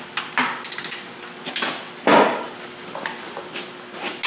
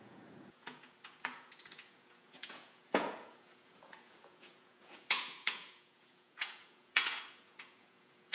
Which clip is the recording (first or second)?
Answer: first